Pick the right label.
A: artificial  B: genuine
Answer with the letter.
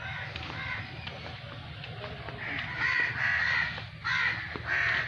B